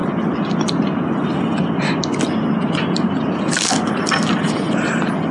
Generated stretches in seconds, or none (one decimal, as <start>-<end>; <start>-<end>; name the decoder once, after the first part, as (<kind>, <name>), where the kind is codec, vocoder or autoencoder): none